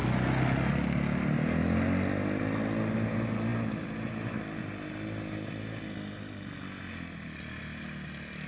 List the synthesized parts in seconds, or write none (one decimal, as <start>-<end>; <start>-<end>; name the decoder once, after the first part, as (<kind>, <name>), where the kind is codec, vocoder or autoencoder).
none